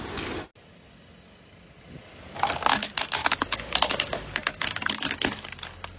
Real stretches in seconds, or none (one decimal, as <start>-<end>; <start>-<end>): 0.0-3.2; 4.9-6.0